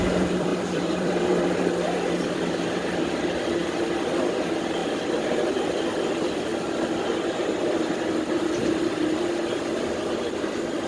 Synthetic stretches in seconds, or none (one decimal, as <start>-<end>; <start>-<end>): 0.0-6.5; 8.4-10.9